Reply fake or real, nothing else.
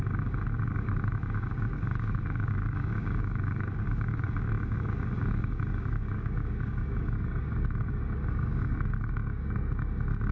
fake